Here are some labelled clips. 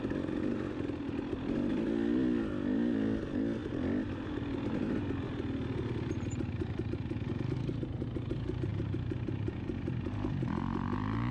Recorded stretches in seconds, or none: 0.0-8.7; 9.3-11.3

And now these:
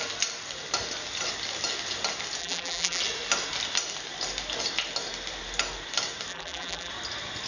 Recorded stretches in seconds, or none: 0.0-2.4; 3.0-6.3; 6.9-7.5

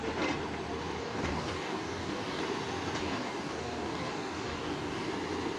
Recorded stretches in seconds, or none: 0.0-1.0; 2.4-3.0; 5.1-5.6